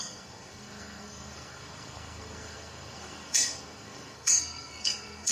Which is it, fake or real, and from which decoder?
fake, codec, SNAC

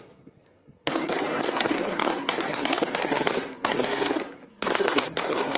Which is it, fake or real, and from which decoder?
fake, codec, SNAC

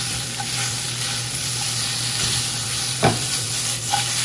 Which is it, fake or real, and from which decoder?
fake, vocoder, BigVGAN v2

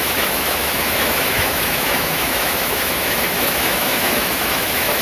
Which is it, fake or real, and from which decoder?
fake, autoencoder, DAC-VAE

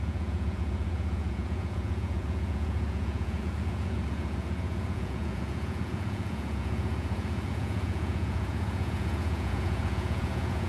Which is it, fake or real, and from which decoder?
fake, vocoder, Vocos